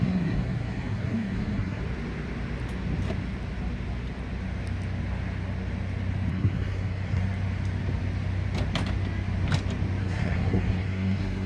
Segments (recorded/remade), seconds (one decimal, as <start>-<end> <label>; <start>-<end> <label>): 0.0-1.8 remade; 1.8-6.3 recorded; 6.3-7.2 remade; 7.2-10.0 recorded; 10.0-11.5 remade